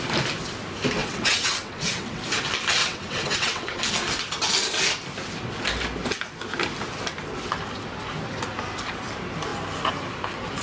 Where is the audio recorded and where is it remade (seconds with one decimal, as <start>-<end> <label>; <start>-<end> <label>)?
0.0-1.0 recorded; 1.0-2.2 remade; 2.2-2.8 recorded; 2.8-3.8 remade; 3.8-10.6 recorded